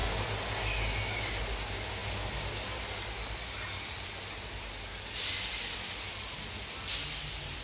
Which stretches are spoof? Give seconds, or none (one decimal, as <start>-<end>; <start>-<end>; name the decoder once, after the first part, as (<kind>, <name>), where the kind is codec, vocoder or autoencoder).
none